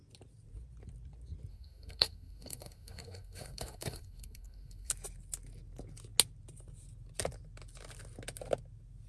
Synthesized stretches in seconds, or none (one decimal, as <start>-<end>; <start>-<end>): 1.5-4.9